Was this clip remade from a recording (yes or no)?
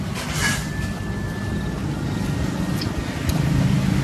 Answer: no